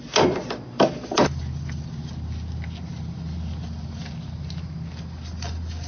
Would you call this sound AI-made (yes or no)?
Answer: no